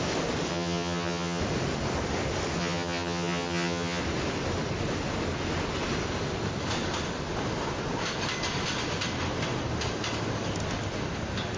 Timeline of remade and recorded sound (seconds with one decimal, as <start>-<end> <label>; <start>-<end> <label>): 0.0-0.5 recorded; 0.5-1.4 remade; 1.4-2.6 recorded; 2.6-4.0 remade; 4.0-11.6 recorded